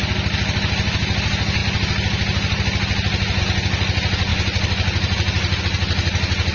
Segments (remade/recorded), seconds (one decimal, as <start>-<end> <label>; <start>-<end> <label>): 0.0-6.5 recorded

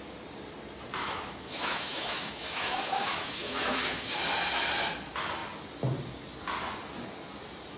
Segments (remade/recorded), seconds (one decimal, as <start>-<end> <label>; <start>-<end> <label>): 0.0-1.0 recorded; 1.0-4.2 remade; 4.2-7.8 recorded

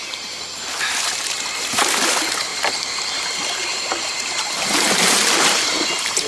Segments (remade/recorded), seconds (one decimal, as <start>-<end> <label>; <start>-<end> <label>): 0.0-2.5 recorded; 2.5-6.3 remade

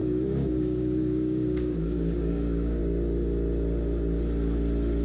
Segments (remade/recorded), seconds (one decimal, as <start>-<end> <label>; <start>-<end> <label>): 0.0-2.8 remade; 2.8-5.0 recorded